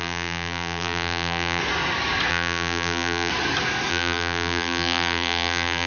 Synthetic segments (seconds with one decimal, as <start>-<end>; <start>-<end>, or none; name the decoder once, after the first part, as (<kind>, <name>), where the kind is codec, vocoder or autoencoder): 0.0-1.6 (vocoder, BigVGAN v2); 2.3-3.3; 3.9-5.9